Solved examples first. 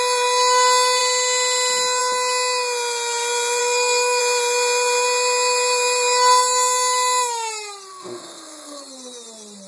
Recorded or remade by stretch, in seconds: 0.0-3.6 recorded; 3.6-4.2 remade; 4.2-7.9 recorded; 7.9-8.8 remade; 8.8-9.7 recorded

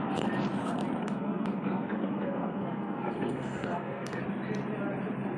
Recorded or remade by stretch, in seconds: 0.0-1.0 recorded; 1.0-4.2 remade; 4.2-5.4 recorded

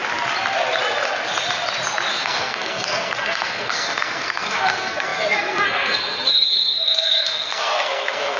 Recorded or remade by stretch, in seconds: 0.0-2.1 recorded; 2.1-8.4 remade

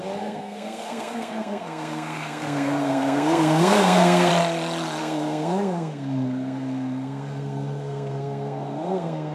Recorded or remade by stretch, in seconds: 0.0-4.3 remade; 4.3-5.0 recorded; 5.0-9.3 remade

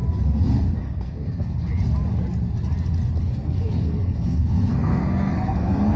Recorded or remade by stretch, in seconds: 0.0-0.8 recorded; 0.8-1.7 remade; 1.7-3.2 recorded; 3.2-6.0 remade

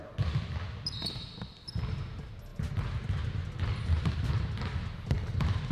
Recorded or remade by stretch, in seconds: 0.0-5.7 recorded